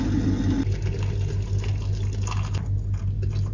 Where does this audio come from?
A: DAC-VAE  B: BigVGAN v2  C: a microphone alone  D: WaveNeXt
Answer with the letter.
C